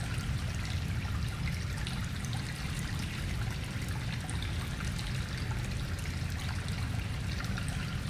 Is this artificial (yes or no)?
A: no